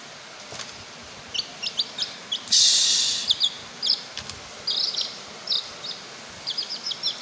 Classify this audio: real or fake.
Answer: real